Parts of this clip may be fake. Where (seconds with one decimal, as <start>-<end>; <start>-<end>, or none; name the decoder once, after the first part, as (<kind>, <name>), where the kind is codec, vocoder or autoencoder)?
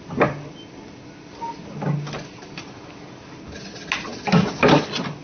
none